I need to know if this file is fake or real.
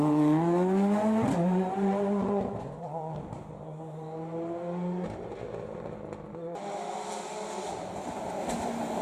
real